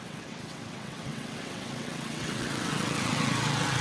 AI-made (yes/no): yes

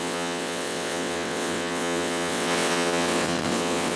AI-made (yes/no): yes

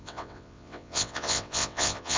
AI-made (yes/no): yes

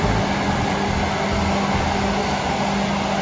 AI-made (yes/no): no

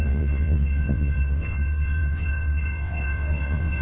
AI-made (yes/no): yes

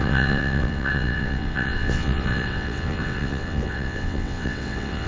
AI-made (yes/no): yes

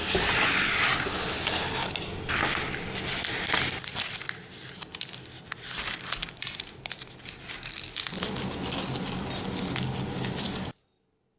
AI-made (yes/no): no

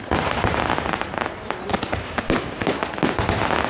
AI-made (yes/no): no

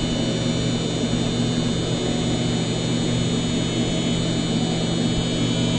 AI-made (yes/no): no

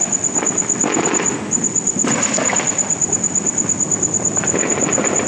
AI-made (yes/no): no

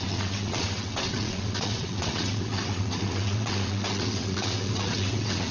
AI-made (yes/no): yes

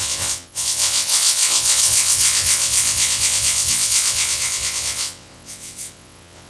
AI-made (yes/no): yes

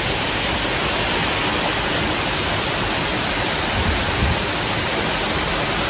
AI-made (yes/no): no